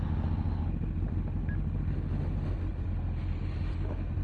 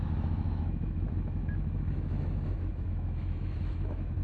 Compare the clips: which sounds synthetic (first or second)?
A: second